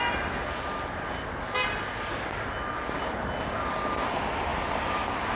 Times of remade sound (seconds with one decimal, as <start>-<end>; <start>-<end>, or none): none